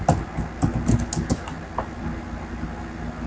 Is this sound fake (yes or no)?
no